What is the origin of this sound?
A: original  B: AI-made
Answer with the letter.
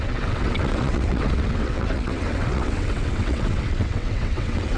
B